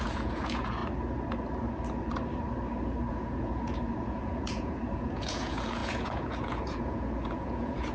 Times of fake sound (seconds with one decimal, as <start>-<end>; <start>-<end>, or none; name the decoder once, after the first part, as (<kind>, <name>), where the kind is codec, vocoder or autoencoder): 0.0-0.8 (vocoder, Vocos); 3.1-7.9